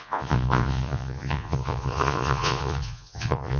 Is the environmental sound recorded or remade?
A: remade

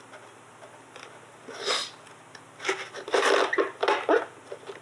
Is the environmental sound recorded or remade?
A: recorded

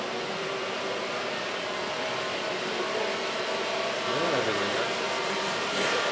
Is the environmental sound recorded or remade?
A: remade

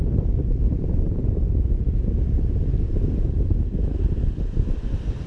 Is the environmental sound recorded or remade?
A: remade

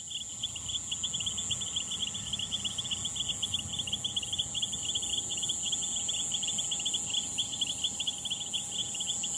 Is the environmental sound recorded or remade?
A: recorded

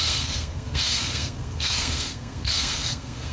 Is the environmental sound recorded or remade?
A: remade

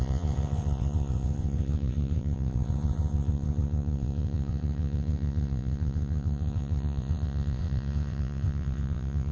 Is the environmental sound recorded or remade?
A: remade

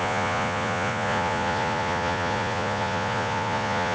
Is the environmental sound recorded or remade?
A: remade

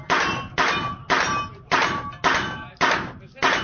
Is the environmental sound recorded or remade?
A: recorded